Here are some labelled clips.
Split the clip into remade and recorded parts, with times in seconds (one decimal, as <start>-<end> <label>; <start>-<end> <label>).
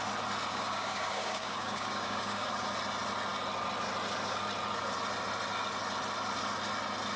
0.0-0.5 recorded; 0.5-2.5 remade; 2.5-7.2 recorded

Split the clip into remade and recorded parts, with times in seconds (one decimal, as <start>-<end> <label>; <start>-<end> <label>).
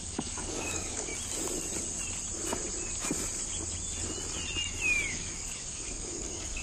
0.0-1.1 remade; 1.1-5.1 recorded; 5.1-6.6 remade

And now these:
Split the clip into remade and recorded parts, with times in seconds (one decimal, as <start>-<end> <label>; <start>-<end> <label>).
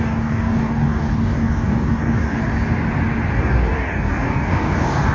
0.0-2.4 remade; 2.4-3.4 recorded; 3.4-5.1 remade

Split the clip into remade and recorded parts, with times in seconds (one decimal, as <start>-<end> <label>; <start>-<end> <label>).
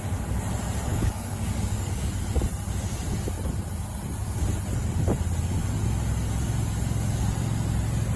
0.0-0.9 recorded; 0.9-2.2 remade; 2.2-8.2 recorded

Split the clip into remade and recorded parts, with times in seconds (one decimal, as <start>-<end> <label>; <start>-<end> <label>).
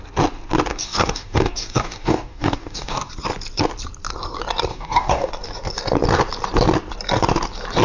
0.0-0.7 recorded; 0.7-3.1 remade; 3.1-4.7 recorded; 4.7-5.3 remade; 5.3-7.8 recorded